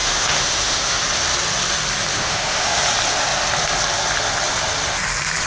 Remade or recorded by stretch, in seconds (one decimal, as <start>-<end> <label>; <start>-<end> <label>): 0.0-1.0 remade; 1.0-2.1 recorded; 2.1-2.8 remade; 2.8-5.5 recorded